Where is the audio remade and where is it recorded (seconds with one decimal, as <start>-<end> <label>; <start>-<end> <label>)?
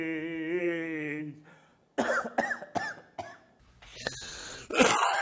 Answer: 0.0-0.6 recorded; 0.6-1.2 remade; 1.2-5.2 recorded